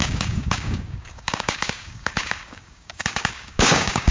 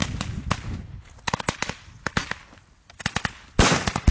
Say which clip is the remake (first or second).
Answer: first